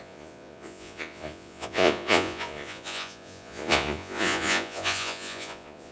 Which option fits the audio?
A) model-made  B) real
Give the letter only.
A